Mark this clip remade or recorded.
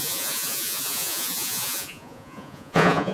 remade